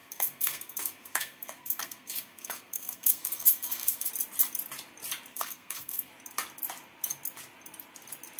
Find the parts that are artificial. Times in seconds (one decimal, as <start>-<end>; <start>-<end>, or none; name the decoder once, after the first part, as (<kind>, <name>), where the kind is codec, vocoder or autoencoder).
0.0-4.1 (codec, SNAC); 5.3-6.1